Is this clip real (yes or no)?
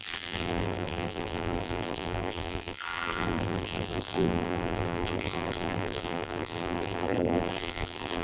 no